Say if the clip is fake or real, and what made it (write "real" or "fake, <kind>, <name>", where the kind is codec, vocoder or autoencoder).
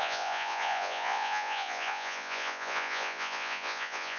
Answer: fake, vocoder, Vocos